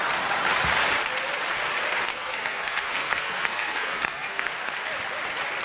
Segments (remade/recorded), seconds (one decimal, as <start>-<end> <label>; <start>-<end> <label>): 0.0-2.1 recorded; 2.1-4.5 remade; 4.5-5.6 recorded